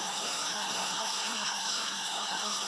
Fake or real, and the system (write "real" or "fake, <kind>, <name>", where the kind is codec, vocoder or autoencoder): fake, codec, SNAC